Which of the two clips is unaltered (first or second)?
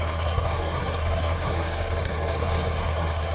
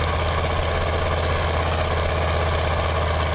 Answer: second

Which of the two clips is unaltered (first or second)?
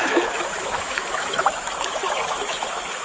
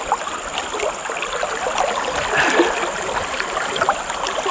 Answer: second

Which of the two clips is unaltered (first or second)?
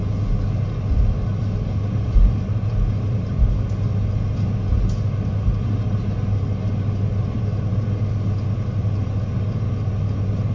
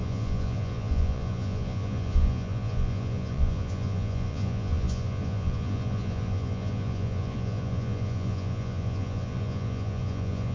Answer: first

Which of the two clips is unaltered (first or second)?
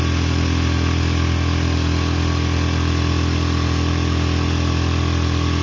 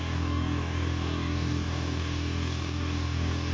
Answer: first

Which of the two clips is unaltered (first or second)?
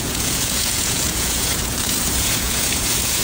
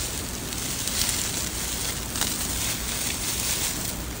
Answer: second